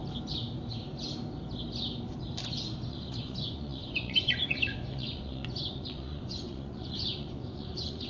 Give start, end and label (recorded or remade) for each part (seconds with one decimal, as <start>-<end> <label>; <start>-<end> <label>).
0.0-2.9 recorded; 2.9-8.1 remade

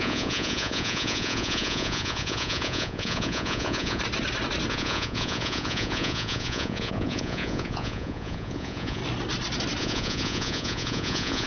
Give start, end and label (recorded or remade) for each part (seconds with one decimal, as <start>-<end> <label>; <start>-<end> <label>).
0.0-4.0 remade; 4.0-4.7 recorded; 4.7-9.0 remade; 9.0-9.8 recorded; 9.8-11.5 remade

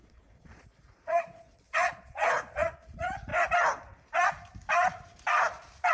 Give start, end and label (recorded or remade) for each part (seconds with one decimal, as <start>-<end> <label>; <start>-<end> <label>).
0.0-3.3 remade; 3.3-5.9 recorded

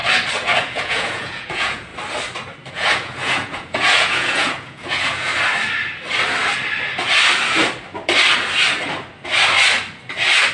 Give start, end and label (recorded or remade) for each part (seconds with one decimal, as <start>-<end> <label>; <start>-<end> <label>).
0.0-0.6 recorded; 0.6-1.9 remade; 1.9-2.7 recorded; 2.7-5.3 remade; 5.3-10.5 recorded

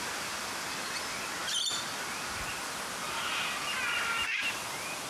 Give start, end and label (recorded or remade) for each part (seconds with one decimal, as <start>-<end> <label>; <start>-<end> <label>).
0.0-5.1 recorded

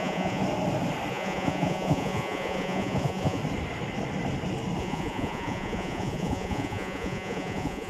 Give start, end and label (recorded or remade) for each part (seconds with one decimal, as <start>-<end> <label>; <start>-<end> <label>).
0.0-0.4 remade; 0.4-1.1 recorded; 1.1-3.4 remade; 3.4-4.8 recorded; 4.8-7.9 remade

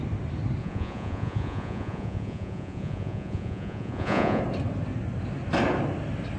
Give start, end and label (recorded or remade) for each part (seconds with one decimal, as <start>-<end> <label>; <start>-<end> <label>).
0.0-0.6 recorded; 0.6-4.4 remade; 4.4-6.4 recorded